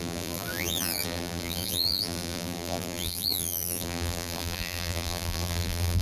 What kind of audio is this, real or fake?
fake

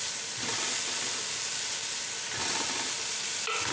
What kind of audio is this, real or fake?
real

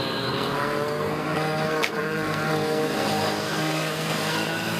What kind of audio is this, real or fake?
fake